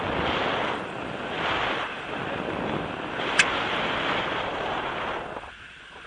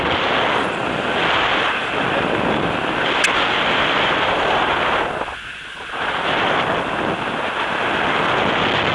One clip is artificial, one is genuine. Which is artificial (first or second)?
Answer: first